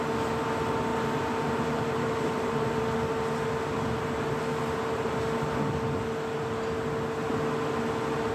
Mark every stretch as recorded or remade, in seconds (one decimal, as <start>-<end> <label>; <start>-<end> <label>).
0.0-0.9 recorded; 0.9-2.8 remade; 2.8-8.3 recorded